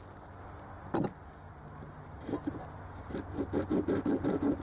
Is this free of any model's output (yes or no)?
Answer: yes